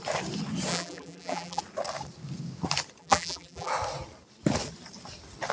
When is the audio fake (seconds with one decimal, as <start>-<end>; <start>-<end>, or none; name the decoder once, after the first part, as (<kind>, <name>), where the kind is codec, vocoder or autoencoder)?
0.7-1.6 (vocoder, BigVGAN v2); 3.0-3.7